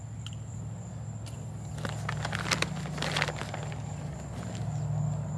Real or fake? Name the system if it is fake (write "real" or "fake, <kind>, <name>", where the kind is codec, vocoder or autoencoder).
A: real